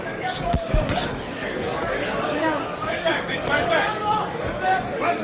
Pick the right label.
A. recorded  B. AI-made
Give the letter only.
B